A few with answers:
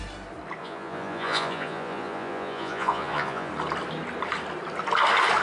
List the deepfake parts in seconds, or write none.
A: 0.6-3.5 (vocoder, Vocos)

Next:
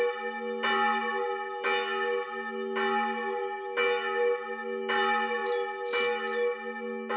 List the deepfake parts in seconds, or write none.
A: none

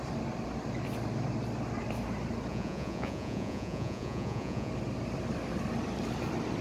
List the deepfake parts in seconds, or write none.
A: 2.5-4.7 (vocoder, Vocos)

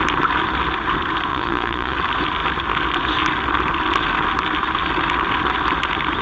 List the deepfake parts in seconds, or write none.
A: 1.3-2.0 (vocoder, Vocos)